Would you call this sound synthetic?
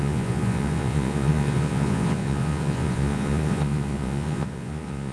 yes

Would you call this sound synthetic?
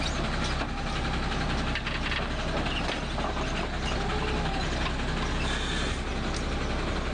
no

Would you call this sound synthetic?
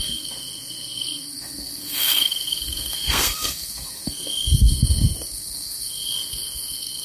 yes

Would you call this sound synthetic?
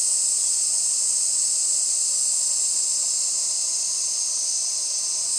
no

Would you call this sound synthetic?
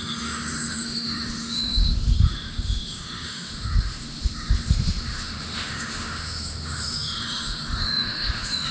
yes